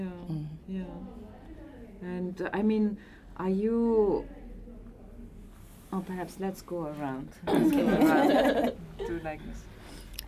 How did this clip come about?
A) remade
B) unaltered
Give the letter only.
B